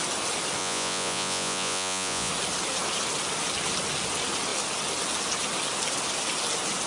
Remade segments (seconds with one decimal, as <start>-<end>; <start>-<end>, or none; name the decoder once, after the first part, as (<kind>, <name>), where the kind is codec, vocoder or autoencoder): 0.6-2.3 (vocoder, Vocos)